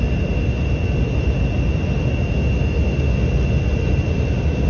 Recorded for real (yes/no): yes